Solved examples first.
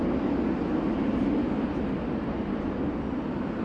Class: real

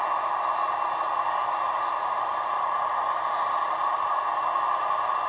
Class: real